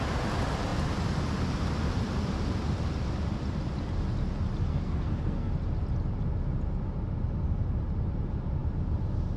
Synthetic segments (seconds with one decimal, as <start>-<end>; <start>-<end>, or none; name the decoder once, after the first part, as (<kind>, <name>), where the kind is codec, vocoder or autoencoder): 4.7-5.5 (codec, SNAC)